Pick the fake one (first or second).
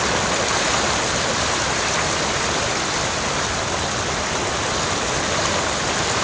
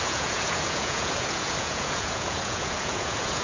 second